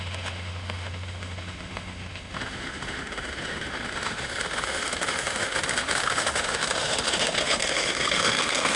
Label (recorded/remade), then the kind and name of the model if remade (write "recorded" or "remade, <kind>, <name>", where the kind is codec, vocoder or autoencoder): remade, autoencoder, DAC-VAE